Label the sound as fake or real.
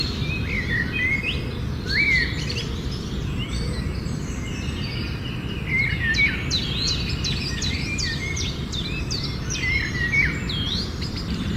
real